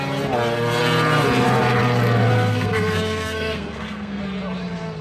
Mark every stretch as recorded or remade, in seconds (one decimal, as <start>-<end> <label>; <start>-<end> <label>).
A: 0.0-2.3 recorded; 2.3-4.2 remade; 4.2-5.0 recorded